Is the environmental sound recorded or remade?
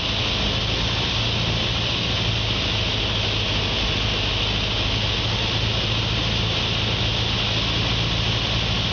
recorded